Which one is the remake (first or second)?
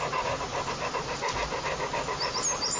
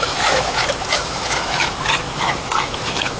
second